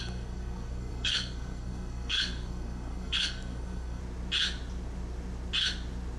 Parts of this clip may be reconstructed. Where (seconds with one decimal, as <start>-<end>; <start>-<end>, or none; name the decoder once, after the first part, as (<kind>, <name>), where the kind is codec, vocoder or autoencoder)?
0.0-4.0 (codec, SNAC)